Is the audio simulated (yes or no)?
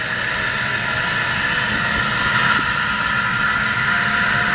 no